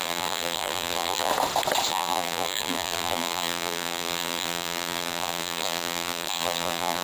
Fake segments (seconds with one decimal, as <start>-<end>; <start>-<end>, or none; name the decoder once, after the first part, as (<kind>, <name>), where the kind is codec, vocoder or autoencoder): 0.0-1.3 (vocoder, BigVGAN v2); 1.9-7.0